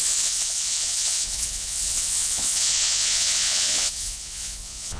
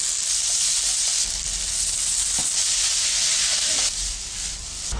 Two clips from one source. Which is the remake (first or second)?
first